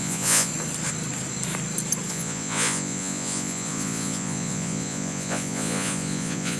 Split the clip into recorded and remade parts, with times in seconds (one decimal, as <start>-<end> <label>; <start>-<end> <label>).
0.0-0.5 remade; 0.5-2.1 recorded; 2.1-6.6 remade